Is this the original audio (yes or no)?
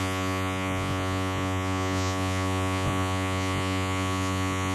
no